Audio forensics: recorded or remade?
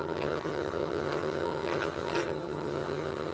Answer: remade